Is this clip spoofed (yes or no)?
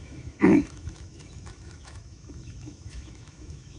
yes